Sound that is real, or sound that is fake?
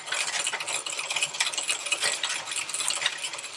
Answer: real